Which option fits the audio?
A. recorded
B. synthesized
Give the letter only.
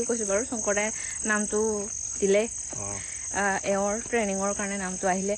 A